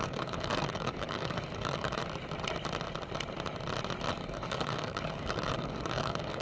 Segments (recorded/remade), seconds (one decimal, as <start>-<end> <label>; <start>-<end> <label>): 0.0-2.0 remade; 2.0-4.1 recorded; 4.1-6.4 remade